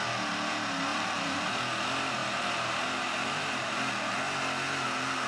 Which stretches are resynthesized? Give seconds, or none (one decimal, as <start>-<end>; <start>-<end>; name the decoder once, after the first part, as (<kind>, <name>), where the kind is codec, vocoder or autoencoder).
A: 0.9-1.5 (vocoder, BigVGAN v2); 2.2-3.9

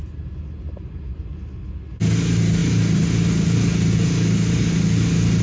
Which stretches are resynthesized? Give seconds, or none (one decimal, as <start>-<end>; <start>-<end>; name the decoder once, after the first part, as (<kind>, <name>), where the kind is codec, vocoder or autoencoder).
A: none

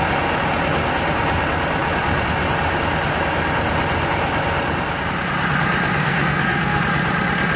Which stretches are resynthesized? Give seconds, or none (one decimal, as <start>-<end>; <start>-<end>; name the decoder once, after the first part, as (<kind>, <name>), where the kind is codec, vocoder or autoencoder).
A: 6.0-6.8 (codec, SNAC)

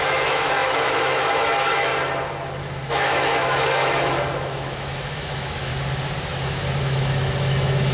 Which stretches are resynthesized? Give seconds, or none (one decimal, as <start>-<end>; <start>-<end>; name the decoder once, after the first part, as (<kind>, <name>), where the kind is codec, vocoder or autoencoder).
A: 0.0-1.9 (autoencoder, DAC-VAE); 2.6-5.7; 6.8-7.9

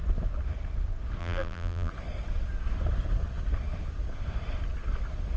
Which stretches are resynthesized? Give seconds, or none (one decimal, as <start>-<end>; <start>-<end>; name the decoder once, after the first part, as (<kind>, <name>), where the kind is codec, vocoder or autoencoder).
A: 1.2-1.9 (vocoder, BigVGAN v2)

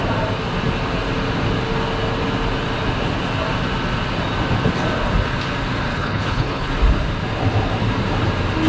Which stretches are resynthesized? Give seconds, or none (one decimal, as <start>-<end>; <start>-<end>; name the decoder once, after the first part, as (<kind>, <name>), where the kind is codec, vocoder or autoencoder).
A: 5.9-6.7 (codec, HILCodec)

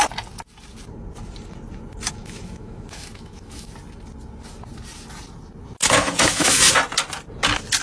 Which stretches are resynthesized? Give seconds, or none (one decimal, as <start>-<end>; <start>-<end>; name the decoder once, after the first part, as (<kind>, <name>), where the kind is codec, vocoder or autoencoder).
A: 2.2-3.7 (autoencoder, DAC-VAE); 5.8-6.7